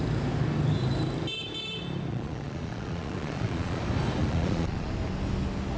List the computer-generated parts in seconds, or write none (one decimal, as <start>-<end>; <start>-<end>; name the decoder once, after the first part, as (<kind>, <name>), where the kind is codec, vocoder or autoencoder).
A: 2.1-3.8 (vocoder, Vocos); 4.2-4.9